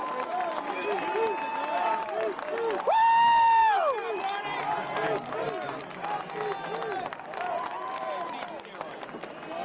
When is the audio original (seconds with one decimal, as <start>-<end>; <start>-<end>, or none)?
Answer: 0.0-9.6